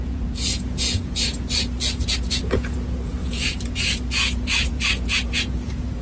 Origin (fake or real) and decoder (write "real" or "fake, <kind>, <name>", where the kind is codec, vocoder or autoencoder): fake, vocoder, Vocos